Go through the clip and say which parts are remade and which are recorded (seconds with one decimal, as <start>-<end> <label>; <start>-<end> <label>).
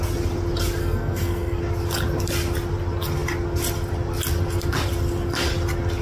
0.0-0.8 recorded; 0.8-1.6 remade; 1.6-6.0 recorded